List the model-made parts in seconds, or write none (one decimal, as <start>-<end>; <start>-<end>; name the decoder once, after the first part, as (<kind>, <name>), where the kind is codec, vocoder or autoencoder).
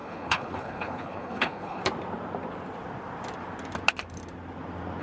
0.0-1.8 (codec, HILCodec)